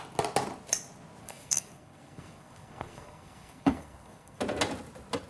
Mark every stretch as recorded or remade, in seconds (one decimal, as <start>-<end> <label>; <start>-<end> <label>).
0.0-1.2 recorded; 1.2-4.4 remade; 4.4-5.3 recorded